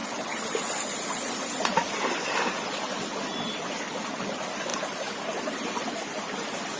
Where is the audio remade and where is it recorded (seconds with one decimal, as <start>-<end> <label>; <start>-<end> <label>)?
0.0-4.7 recorded; 4.7-6.8 remade